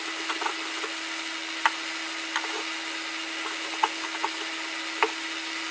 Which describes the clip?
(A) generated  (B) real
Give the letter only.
B